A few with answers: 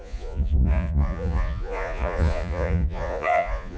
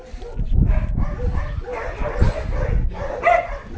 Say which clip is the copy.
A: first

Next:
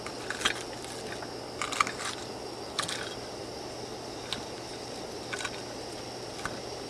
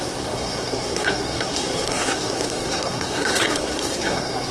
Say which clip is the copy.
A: second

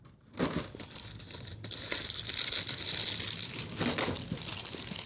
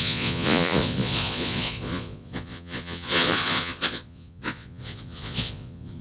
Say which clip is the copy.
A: second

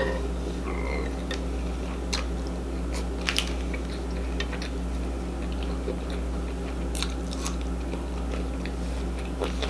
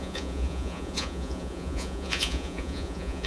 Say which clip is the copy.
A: second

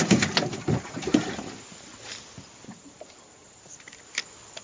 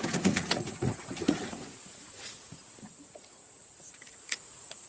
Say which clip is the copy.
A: second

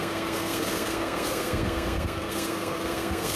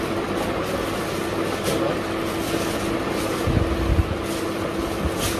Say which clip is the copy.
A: first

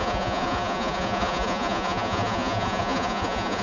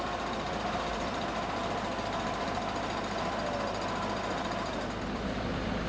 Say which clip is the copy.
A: first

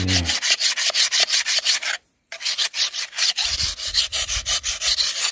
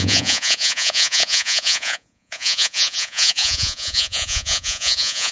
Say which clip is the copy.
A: second